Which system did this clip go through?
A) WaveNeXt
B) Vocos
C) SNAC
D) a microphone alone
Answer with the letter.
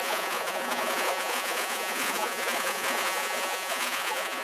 B